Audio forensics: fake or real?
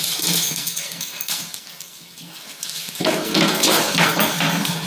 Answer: fake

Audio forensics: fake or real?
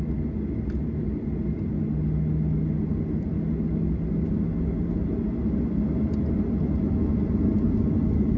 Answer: real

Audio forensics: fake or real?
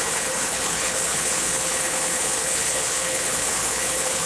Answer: fake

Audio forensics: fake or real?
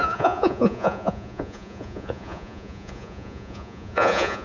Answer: fake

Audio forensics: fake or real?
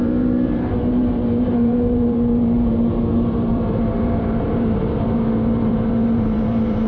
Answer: fake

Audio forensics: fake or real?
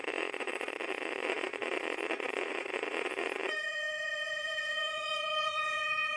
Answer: fake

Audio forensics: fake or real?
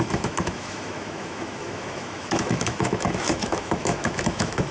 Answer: fake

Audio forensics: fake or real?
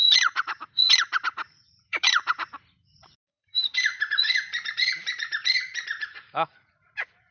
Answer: fake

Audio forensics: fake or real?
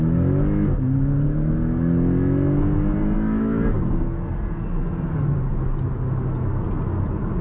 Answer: real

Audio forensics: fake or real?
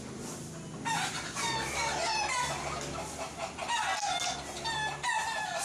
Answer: real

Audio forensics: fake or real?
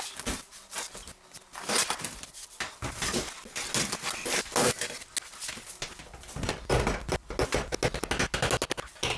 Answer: real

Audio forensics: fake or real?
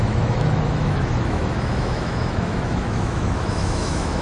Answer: fake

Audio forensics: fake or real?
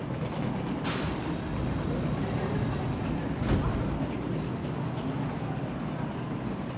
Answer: real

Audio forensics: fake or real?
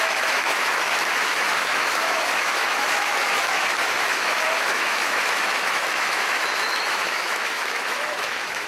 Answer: fake